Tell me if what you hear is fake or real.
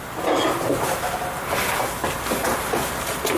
real